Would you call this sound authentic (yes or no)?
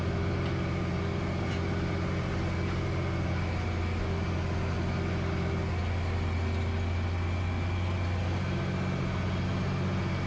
yes